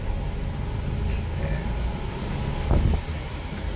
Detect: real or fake real